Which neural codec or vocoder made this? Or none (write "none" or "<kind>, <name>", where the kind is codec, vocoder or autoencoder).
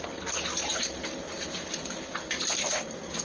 none